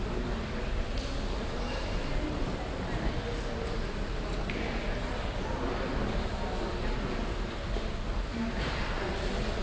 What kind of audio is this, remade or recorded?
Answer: recorded